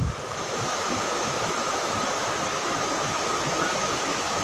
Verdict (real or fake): fake